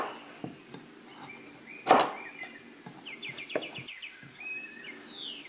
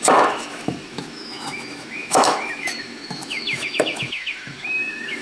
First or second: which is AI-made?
second